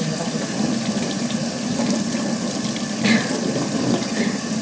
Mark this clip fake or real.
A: real